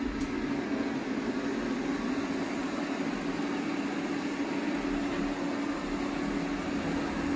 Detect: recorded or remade recorded